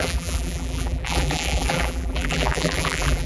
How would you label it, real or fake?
fake